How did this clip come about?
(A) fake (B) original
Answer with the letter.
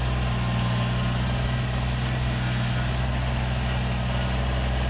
B